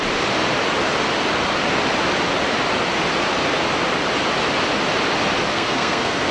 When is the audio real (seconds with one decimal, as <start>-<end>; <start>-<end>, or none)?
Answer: 0.0-5.5